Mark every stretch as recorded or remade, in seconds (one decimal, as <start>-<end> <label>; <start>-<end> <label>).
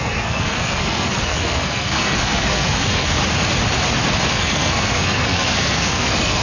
0.0-3.2 remade; 3.2-4.3 recorded; 4.3-6.4 remade